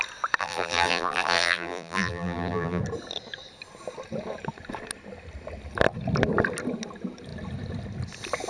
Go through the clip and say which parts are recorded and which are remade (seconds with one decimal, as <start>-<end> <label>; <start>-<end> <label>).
0.0-0.4 recorded; 0.4-2.8 remade; 2.8-8.5 recorded